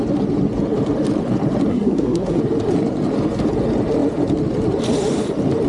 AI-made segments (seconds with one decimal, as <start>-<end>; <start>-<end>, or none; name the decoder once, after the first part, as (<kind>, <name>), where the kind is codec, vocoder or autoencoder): 1.7-2.4 (codec, SNAC)